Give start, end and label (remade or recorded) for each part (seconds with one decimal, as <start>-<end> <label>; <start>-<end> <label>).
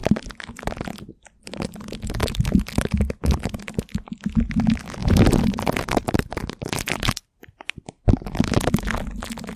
0.0-5.0 recorded; 5.0-8.4 remade; 8.4-9.6 recorded